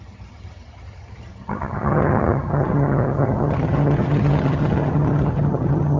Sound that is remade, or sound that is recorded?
remade